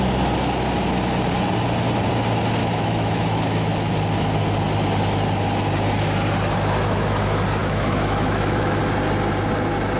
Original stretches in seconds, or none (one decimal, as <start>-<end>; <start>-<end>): 0.0-2.6; 3.9-7.6; 8.8-10.0